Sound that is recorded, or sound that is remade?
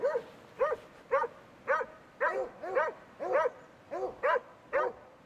recorded